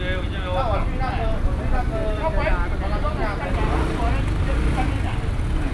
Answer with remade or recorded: recorded